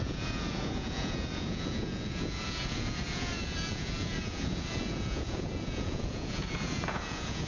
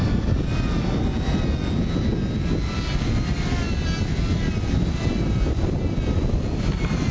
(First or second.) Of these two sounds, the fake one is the first